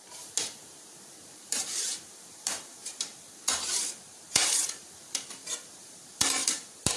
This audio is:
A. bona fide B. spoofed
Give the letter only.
B